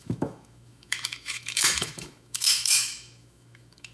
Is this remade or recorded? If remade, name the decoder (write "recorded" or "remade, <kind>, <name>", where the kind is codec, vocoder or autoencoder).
remade, autoencoder, DAC-VAE